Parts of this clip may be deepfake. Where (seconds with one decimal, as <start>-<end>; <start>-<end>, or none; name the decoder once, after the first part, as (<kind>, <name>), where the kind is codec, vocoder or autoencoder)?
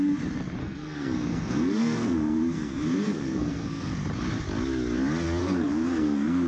0.6-3.9 (codec, SNAC); 5.4-6.5